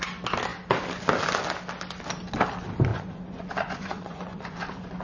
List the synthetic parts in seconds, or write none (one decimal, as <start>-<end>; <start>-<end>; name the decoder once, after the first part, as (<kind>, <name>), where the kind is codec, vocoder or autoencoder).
2.9-5.0 (vocoder, Vocos)

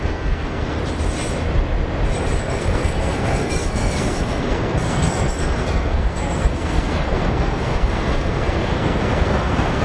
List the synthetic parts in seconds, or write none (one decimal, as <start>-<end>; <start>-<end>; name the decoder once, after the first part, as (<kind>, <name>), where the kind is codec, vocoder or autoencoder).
0.0-0.8 (codec, SNAC); 2.4-9.8